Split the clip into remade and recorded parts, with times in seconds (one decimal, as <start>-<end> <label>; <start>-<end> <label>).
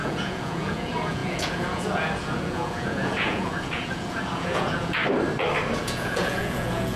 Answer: 0.0-5.0 remade; 5.0-5.8 recorded; 5.8-7.0 remade